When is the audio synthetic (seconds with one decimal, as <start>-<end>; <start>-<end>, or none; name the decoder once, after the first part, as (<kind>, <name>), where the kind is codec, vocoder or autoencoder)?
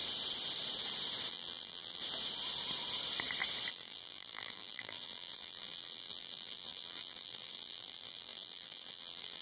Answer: 1.3-2.0 (vocoder, BigVGAN v2); 3.7-9.4